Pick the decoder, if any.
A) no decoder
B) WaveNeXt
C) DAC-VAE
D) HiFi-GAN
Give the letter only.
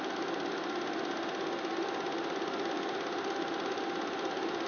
A